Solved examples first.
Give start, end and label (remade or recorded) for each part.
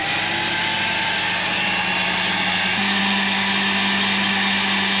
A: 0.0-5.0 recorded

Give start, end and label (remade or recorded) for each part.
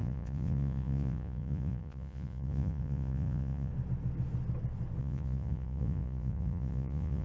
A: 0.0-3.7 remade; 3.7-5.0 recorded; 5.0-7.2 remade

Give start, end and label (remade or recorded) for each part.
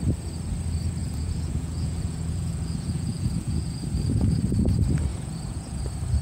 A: 0.0-1.0 recorded; 1.0-3.8 remade; 3.8-5.1 recorded; 5.1-5.8 remade; 5.8-6.2 recorded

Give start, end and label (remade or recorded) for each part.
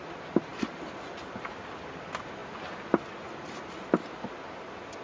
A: 0.0-5.0 recorded